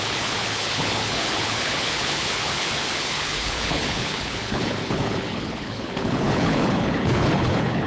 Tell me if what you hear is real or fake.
fake